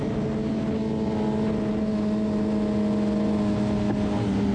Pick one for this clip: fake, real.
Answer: real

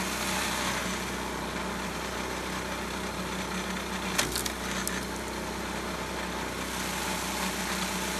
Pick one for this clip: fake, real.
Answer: real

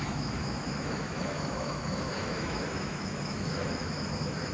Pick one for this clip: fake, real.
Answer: fake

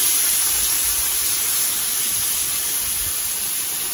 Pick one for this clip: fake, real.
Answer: real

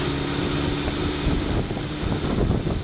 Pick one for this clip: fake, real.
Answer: real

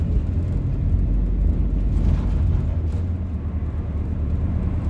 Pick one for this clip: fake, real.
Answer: real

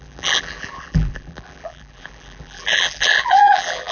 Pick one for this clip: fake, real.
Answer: fake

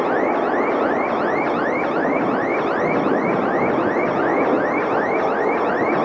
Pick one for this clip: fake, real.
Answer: real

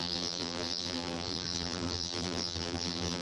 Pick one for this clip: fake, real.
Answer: fake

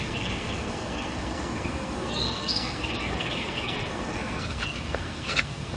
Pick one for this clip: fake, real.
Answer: fake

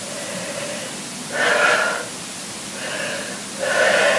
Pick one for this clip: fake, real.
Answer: real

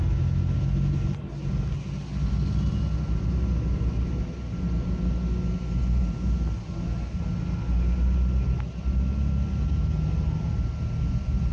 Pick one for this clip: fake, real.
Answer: real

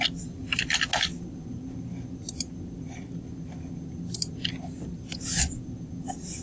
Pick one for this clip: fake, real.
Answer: real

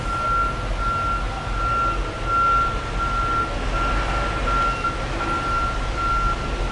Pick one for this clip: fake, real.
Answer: real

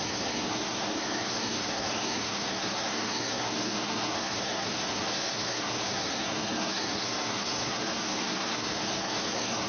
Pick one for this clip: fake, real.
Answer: fake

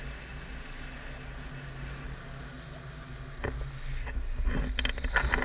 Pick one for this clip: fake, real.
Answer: real